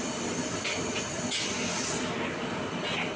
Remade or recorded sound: recorded